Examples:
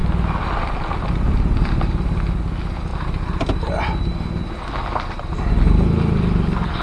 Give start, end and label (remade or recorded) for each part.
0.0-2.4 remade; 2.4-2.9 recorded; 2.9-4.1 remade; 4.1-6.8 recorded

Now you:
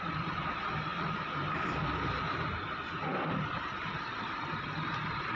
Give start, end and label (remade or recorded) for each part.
0.0-5.4 remade

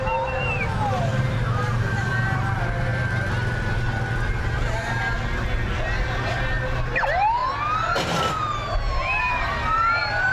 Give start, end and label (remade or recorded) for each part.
0.0-2.9 remade; 2.9-6.8 recorded; 6.8-7.4 remade; 7.4-9.2 recorded; 9.2-10.3 remade

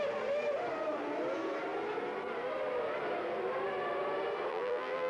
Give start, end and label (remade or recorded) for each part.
0.0-4.5 recorded; 4.5-5.1 remade

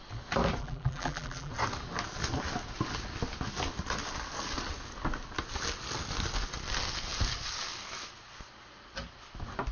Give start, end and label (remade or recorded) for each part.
0.0-0.6 recorded; 0.6-1.5 remade; 1.5-9.7 recorded

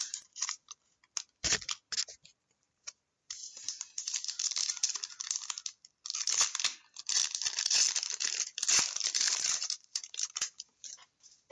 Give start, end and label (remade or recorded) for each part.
0.0-1.0 remade; 1.0-2.4 recorded; 2.4-4.6 remade; 4.6-9.3 recorded; 9.3-11.5 remade